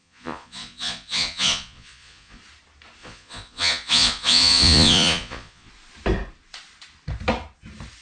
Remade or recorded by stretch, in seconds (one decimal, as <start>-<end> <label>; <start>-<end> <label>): 0.0-2.4 remade; 2.4-3.0 recorded; 3.0-5.7 remade; 5.7-8.0 recorded